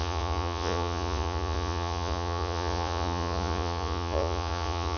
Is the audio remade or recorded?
remade